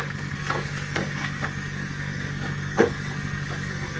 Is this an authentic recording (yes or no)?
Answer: no